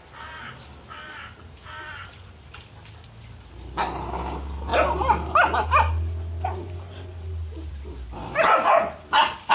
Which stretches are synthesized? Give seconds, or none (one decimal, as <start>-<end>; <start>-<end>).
none